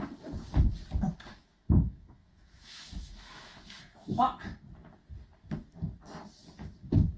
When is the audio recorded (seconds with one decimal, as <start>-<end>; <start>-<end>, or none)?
0.0-1.3; 4.4-7.2